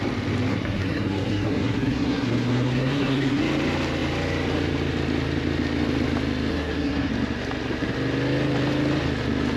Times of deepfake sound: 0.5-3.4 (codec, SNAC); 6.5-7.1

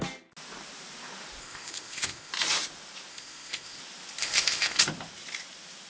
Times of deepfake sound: 1.4-2.3 (codec, ZipCodec); 3.1-3.8; 4.2-4.8